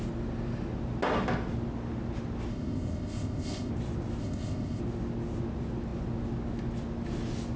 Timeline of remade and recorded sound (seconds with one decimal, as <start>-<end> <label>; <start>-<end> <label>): 0.0-2.5 recorded; 2.5-3.7 remade; 3.7-4.2 recorded; 4.2-4.8 remade; 4.8-7.6 recorded